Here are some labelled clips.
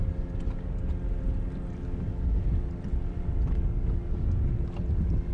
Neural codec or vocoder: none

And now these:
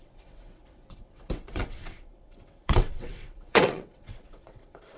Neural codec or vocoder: vocoder, WaveNeXt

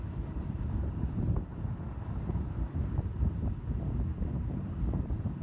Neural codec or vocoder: vocoder, BigVGAN v2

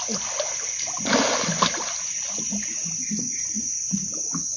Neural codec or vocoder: none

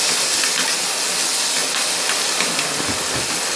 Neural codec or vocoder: none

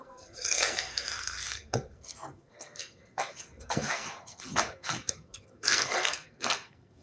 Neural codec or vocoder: codec, SNAC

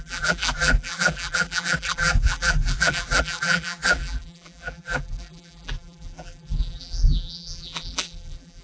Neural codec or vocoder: vocoder, BigVGAN v2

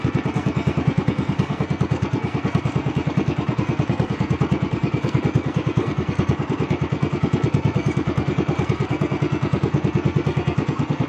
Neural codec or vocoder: codec, SNAC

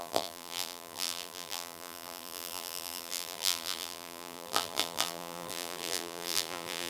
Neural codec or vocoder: vocoder, BigVGAN v2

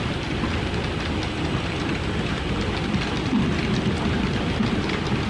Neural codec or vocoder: none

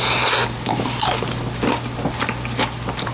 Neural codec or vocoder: none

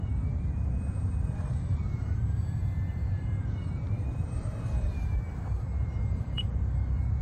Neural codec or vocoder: vocoder, BigVGAN v2